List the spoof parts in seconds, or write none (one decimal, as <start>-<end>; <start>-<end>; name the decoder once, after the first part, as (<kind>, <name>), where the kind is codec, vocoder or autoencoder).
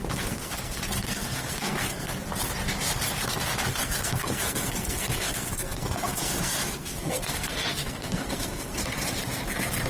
0.0-2.1 (codec, SNAC); 3.8-8.8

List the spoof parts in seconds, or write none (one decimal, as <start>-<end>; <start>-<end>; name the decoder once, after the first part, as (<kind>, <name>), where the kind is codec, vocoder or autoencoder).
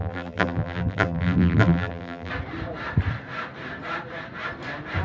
0.0-2.3 (vocoder, BigVGAN v2)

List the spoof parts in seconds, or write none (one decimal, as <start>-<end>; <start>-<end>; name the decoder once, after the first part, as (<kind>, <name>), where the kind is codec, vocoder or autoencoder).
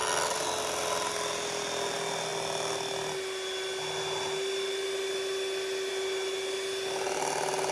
none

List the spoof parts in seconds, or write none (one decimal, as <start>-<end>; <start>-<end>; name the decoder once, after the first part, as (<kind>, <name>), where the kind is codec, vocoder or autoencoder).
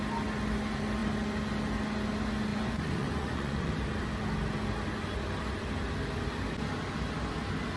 2.5-3.7 (vocoder, Vocos)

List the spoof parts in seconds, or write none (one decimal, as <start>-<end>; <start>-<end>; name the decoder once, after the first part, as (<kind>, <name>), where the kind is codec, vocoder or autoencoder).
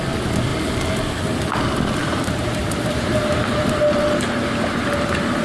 2.0-3.8 (vocoder, BigVGAN v2)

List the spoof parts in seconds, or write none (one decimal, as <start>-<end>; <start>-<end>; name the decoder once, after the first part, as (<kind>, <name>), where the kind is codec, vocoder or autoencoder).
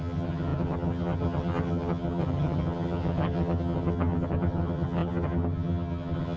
0.0-6.4 (vocoder, HiFi-GAN)